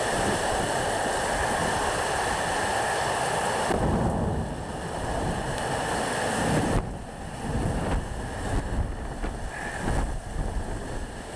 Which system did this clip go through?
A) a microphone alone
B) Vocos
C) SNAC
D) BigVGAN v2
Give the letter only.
A